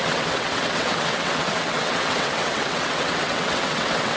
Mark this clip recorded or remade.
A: remade